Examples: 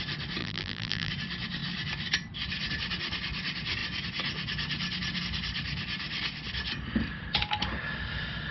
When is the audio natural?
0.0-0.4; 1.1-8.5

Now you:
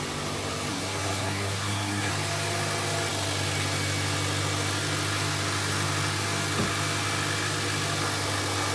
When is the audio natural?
0.0-0.7; 2.1-8.7

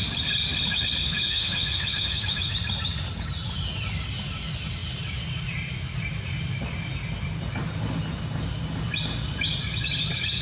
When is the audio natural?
0.0-1.0; 2.5-10.4

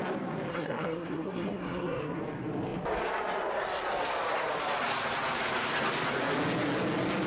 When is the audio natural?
0.0-0.5; 2.2-7.3

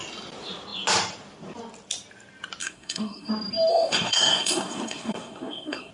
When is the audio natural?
0.0-2.6; 3.3-3.7

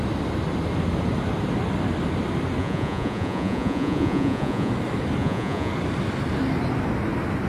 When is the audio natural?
0.0-2.6; 4.7-5.2; 5.7-7.5